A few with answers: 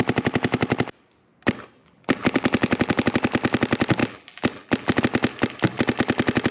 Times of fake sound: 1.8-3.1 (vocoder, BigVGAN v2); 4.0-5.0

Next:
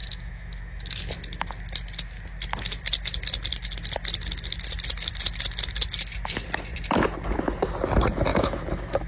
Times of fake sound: 0.0-1.1 (autoencoder, DAC-VAE); 8.3-9.1

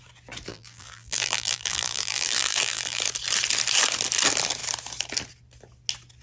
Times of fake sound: 0.5-3.0 (vocoder, BigVGAN v2)

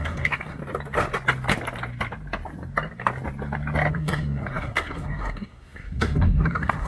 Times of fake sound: 0.0-0.6 (codec, SNAC); 3.9-6.9

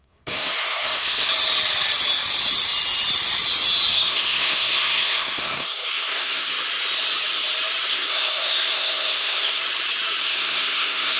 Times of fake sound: 0.0-1.3 (codec, SNAC); 3.9-6.5; 7.9-9.6; 10.2-11.2

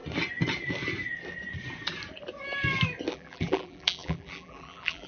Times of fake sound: 3.1-5.1 (vocoder, BigVGAN v2)